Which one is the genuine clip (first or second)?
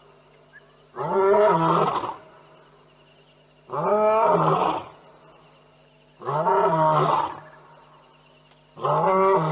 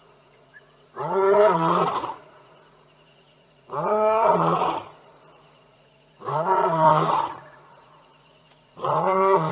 first